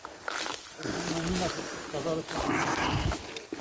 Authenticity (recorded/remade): recorded